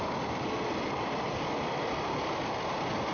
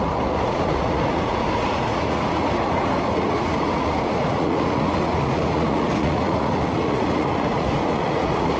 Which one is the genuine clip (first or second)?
first